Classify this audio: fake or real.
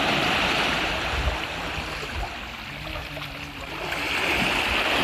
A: real